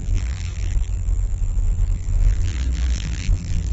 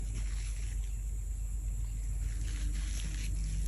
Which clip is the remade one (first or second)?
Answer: first